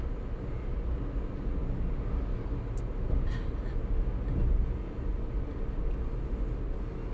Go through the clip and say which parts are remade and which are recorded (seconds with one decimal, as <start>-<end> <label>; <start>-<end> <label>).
0.0-4.4 recorded; 4.4-5.8 remade; 5.8-7.1 recorded